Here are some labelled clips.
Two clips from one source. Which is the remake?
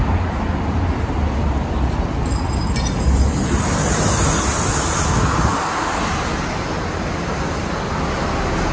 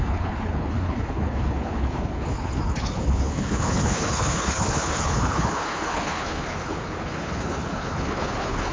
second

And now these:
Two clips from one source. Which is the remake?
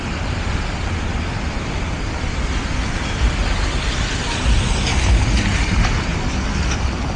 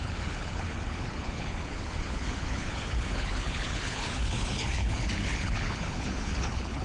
second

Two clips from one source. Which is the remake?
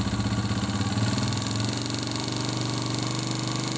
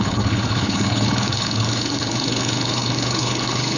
second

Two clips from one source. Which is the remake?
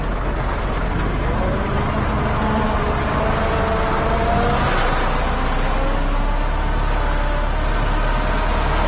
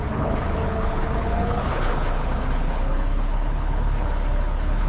second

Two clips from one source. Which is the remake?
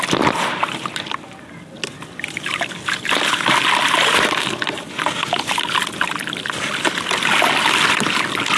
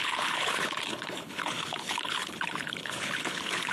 second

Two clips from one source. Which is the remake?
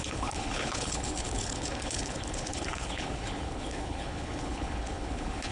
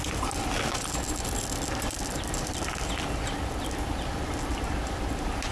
first